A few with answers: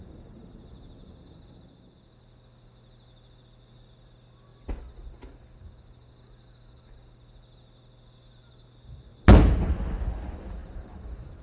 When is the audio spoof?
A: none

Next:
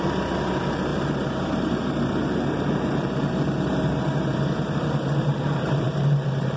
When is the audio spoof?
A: 0.0-6.6 (vocoder, BigVGAN v2)

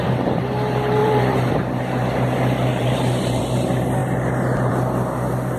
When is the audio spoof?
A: 1.0-1.5 (vocoder, BigVGAN v2); 2.7-3.4

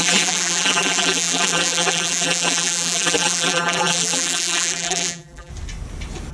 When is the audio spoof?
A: 0.0-5.5 (vocoder, BigVGAN v2)

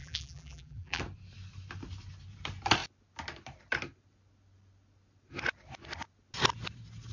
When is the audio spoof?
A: 0.0-1.0 (vocoder, BigVGAN v2)

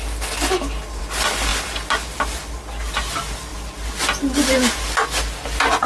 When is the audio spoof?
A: none

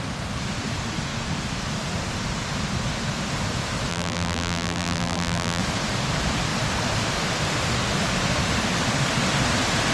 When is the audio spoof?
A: 3.9-5.6 (vocoder, BigVGAN v2)

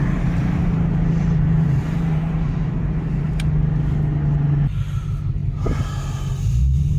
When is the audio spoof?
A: 0.4-3.2 (vocoder, BigVGAN v2)